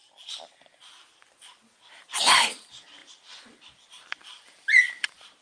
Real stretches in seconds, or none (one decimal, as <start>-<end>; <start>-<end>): 1.0-3.0